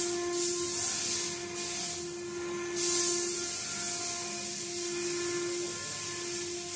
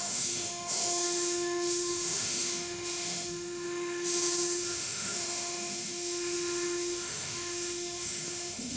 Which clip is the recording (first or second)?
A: first